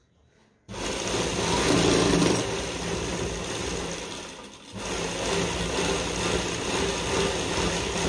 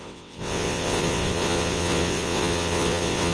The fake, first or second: second